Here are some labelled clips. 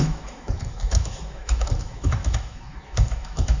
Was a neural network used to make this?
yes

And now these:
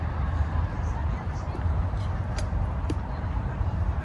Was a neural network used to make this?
yes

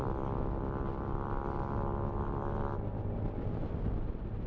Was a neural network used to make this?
no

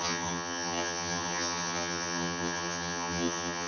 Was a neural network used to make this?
yes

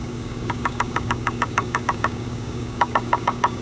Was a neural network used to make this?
yes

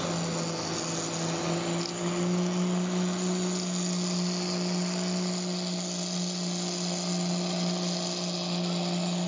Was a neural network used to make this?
no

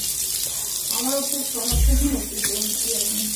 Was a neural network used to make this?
yes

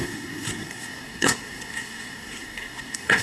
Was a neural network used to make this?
yes